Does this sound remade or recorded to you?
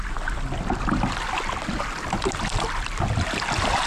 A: recorded